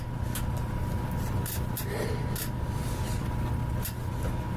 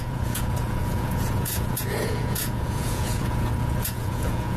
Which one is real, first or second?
first